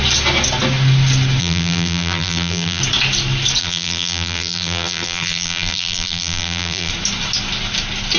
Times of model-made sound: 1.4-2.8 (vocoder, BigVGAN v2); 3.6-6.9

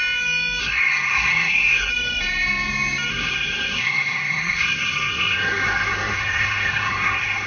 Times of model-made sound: 0.6-1.9 (codec, SNAC); 3.1-7.5

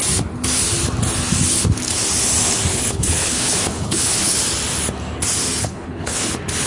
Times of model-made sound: 2.7-4.4 (codec, HILCodec); 5.6-6.3

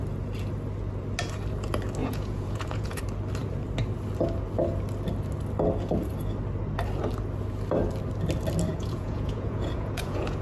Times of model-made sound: 2.0-3.0 (vocoder, Vocos); 8.7-10.4

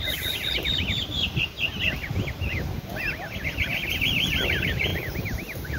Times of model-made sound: 4.9-5.8 (vocoder, BigVGAN v2)

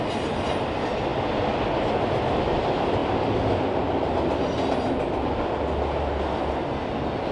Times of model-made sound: none